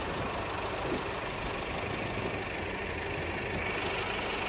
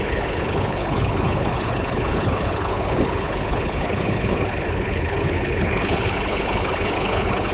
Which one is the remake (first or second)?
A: second